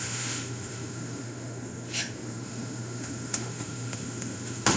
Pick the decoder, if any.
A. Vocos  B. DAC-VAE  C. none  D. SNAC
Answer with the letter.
B